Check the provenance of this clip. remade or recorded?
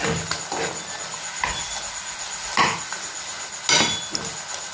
recorded